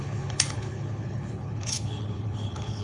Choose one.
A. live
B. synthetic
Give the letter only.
B